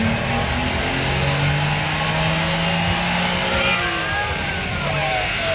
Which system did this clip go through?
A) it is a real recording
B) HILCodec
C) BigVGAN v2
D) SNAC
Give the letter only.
A